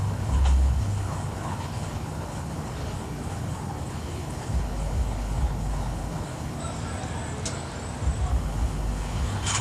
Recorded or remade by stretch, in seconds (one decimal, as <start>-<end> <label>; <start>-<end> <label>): 0.0-6.6 remade; 6.6-8.3 recorded; 8.3-9.6 remade